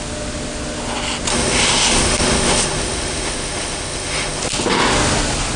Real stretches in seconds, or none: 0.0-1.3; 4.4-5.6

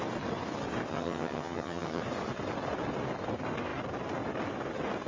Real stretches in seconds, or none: 0.0-0.9; 2.0-5.1

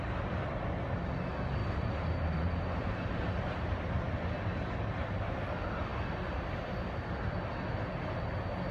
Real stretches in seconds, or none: 0.0-1.6; 4.1-8.7

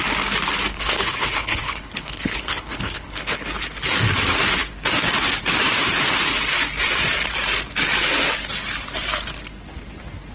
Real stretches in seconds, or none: 0.0-0.7; 3.5-10.3

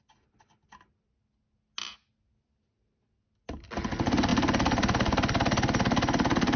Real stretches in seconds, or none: 0.0-6.6

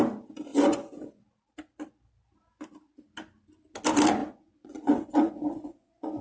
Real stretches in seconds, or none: 0.0-0.5; 1.2-4.2

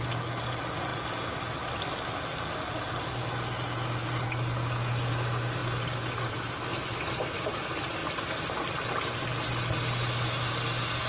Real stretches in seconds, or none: 0.0-5.6; 6.3-8.0; 9.2-11.1

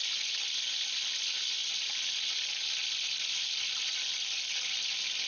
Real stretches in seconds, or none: 0.0-5.3